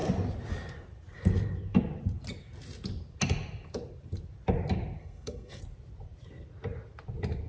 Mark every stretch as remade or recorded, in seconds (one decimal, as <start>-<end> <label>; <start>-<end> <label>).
0.0-5.0 recorded; 5.0-5.6 remade; 5.6-7.5 recorded